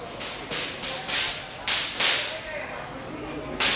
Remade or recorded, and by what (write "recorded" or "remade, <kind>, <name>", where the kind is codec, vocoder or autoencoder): recorded